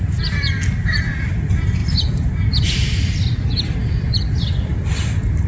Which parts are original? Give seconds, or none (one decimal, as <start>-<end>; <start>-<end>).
0.0-5.5